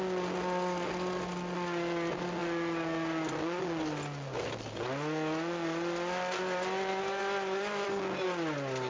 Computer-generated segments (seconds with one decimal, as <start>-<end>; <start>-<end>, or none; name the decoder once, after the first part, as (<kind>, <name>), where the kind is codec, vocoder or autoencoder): 7.2-8.0 (vocoder, BigVGAN v2)